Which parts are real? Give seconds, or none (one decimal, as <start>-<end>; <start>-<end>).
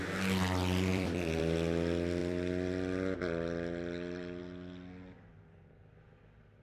0.0-0.9; 1.4-2.2; 4.4-6.6